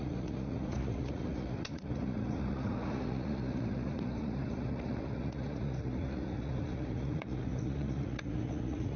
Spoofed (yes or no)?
yes